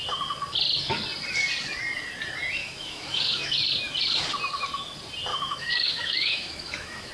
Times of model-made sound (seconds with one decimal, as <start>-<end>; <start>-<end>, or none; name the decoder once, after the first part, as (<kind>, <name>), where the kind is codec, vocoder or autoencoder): 2.6-3.5 (autoencoder, DAC-VAE); 5.3-7.1